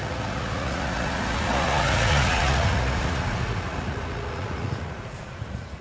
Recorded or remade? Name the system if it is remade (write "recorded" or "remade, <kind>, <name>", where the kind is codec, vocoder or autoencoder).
remade, vocoder, Vocos